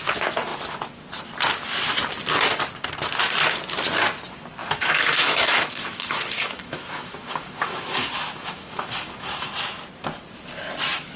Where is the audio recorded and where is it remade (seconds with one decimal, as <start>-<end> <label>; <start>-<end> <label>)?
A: 0.0-4.6 recorded; 4.6-9.5 remade; 9.5-11.2 recorded